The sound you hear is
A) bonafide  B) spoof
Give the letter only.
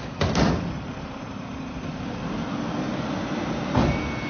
A